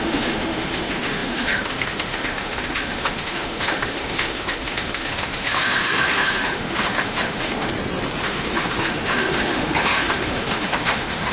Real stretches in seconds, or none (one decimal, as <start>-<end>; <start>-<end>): 7.7-8.2